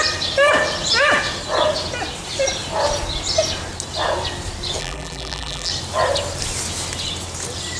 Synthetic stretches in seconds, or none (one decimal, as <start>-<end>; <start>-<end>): 4.8-5.7